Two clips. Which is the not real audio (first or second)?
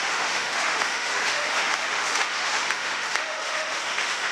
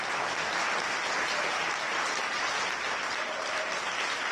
first